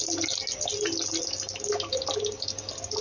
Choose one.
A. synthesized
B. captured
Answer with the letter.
B